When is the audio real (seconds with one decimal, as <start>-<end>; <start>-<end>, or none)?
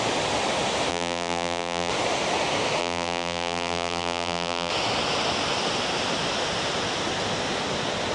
0.0-0.9; 1.9-2.8; 4.7-8.1